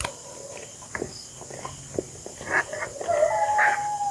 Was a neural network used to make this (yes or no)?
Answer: no